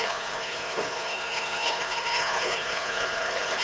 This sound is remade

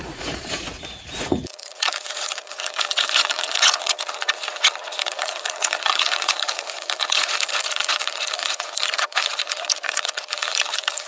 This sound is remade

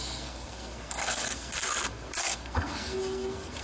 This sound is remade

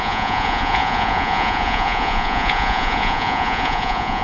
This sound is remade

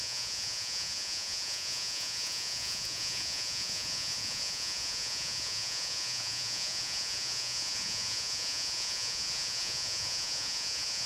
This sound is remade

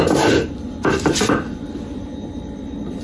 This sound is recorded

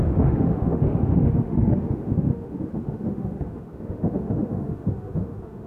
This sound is remade